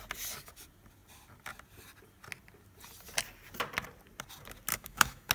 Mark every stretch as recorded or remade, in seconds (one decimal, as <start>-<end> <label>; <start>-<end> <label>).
0.0-4.7 recorded; 4.7-5.3 remade